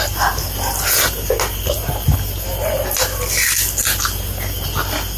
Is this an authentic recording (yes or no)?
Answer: yes